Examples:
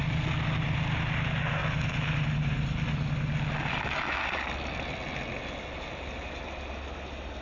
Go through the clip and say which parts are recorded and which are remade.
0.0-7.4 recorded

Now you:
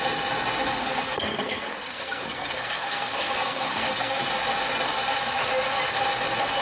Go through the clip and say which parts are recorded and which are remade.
0.0-0.8 recorded; 0.8-4.2 remade; 4.2-6.6 recorded